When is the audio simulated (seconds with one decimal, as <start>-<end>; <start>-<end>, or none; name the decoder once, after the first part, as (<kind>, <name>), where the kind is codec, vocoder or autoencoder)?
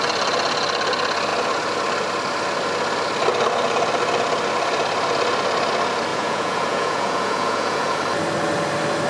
6.1-8.0 (vocoder, Vocos)